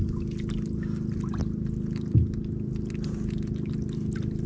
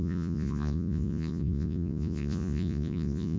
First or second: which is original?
first